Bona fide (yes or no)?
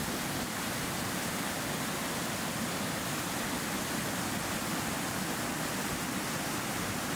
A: yes